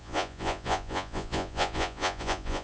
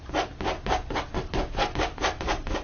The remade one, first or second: first